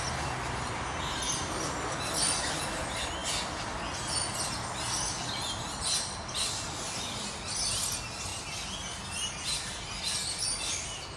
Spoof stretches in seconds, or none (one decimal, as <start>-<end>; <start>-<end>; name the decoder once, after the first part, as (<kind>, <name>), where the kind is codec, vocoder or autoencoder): none